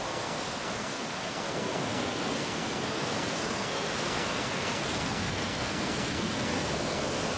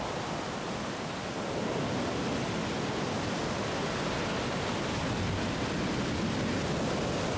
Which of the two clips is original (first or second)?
second